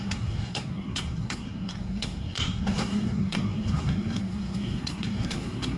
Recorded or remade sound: remade